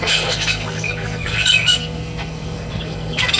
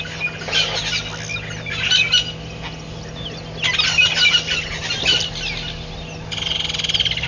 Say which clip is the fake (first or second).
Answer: first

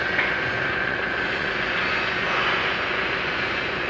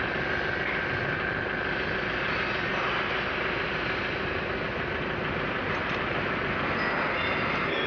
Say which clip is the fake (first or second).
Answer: first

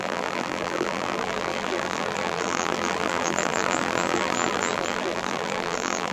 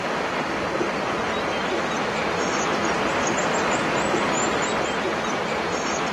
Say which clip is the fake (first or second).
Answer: first